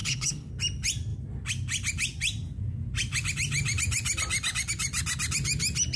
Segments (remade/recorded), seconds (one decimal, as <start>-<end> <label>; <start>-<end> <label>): 0.0-0.5 remade; 0.5-6.0 recorded

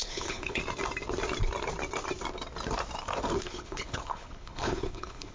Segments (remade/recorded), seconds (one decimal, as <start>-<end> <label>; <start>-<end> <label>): 0.0-0.6 remade; 0.6-3.4 recorded; 3.4-5.3 remade